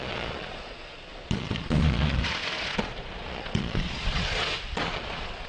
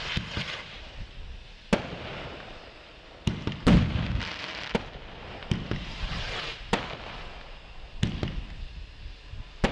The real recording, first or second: second